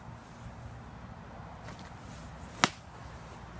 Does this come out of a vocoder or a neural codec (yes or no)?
no